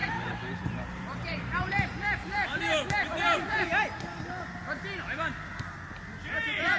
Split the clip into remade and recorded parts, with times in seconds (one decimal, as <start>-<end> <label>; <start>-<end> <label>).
0.0-3.7 remade; 3.7-6.3 recorded; 6.3-6.8 remade